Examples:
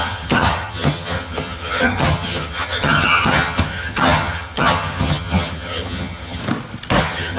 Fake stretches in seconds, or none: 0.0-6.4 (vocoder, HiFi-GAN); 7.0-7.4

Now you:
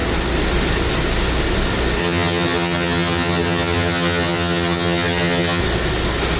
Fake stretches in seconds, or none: 2.0-5.6 (vocoder, HiFi-GAN)

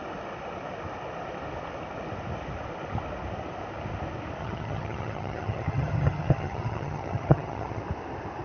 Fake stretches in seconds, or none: 4.4-7.8 (vocoder, HiFi-GAN)

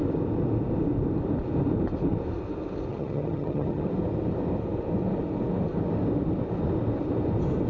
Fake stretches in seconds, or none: 2.9-3.9 (vocoder, HiFi-GAN)

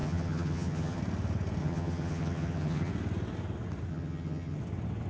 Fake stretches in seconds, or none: 0.0-1.0 (vocoder, HiFi-GAN); 1.6-2.9; 3.9-4.6

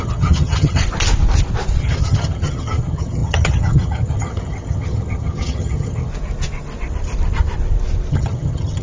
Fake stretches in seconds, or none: 0.0-0.8 (vocoder, HiFi-GAN); 1.8-6.1; 8.1-8.8

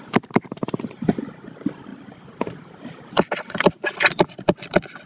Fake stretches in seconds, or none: none

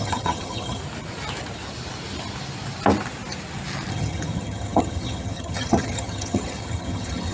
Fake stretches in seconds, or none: 0.0-0.8 (vocoder, HiFi-GAN); 3.9-7.3